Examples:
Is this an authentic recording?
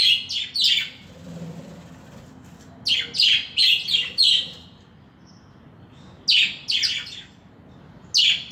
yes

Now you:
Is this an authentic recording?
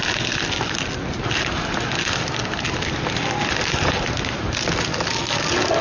yes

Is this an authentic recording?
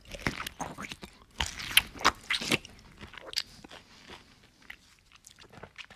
yes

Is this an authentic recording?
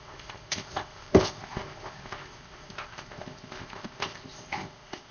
no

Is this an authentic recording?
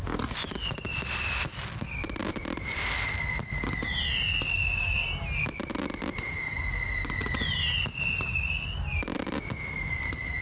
yes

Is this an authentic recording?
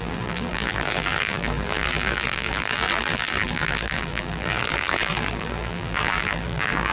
no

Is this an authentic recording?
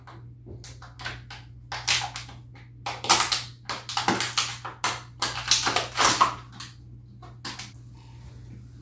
yes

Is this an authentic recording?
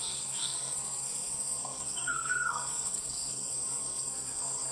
no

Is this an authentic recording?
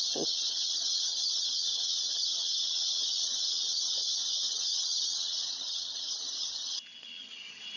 no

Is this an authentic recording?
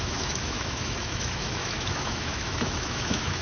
no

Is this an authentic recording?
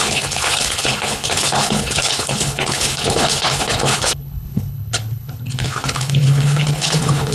no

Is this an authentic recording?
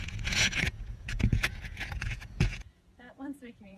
no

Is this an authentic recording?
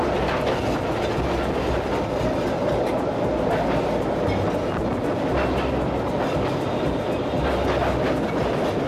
yes